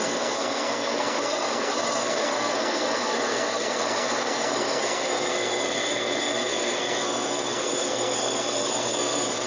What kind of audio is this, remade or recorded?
remade